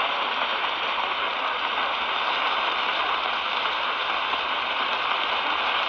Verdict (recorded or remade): remade